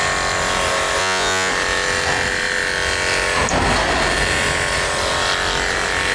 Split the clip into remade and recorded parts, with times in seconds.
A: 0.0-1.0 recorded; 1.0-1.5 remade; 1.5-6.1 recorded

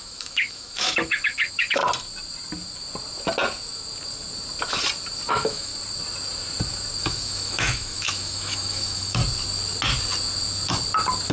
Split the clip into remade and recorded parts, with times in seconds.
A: 0.0-1.8 remade; 1.8-5.3 recorded; 5.3-5.7 remade; 5.7-7.0 recorded; 7.0-9.2 remade; 9.2-11.3 recorded

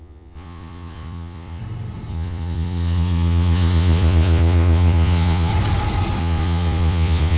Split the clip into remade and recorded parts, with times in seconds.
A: 0.0-1.6 remade; 1.6-2.1 recorded; 2.1-5.5 remade; 5.5-6.2 recorded; 6.2-7.4 remade

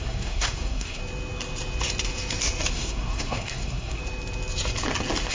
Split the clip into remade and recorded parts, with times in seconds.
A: 0.0-1.0 remade; 1.0-2.7 recorded; 2.7-4.0 remade; 4.0-5.3 recorded